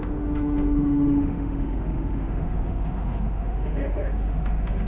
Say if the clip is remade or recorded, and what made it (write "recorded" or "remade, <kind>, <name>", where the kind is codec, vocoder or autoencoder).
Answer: remade, autoencoder, DAC-VAE